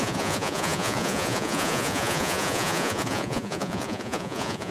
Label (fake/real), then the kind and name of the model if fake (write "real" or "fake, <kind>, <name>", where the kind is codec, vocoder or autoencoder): fake, vocoder, Vocos